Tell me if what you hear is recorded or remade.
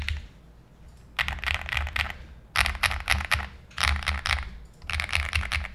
recorded